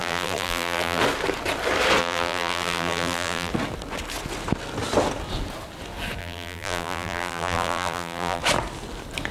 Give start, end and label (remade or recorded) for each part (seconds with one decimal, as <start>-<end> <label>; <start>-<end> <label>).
0.0-1.0 remade; 1.0-2.0 recorded; 2.0-3.5 remade; 3.5-6.2 recorded; 6.2-8.4 remade; 8.4-9.3 recorded